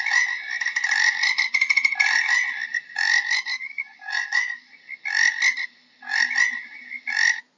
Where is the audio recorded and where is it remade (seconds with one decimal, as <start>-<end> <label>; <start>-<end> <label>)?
0.0-3.5 recorded; 3.5-4.7 remade; 4.7-7.6 recorded